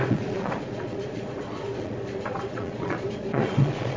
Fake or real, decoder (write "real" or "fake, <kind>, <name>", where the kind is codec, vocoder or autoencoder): fake, vocoder, Vocos